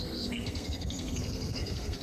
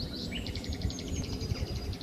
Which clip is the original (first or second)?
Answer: second